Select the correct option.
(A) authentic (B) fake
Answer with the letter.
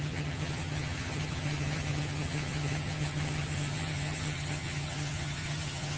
B